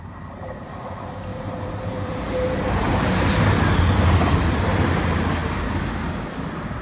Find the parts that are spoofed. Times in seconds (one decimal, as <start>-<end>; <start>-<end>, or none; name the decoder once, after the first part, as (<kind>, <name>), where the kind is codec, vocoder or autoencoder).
1.3-3.3 (vocoder, BigVGAN v2)